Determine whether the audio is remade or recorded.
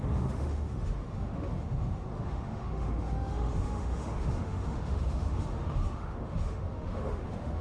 remade